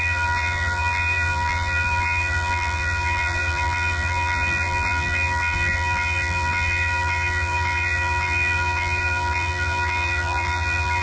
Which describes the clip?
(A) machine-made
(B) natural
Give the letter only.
A